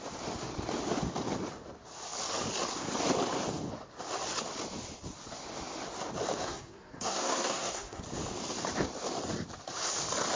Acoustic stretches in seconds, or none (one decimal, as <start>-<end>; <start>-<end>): 0.0-6.4; 8.0-10.4